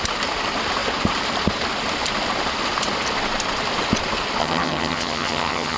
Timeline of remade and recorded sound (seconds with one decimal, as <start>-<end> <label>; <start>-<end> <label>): 0.0-4.4 recorded; 4.4-5.8 remade